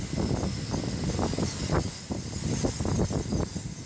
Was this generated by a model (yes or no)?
no